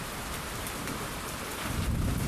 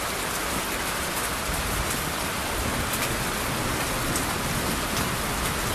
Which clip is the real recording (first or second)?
second